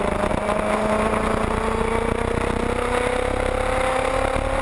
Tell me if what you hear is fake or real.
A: real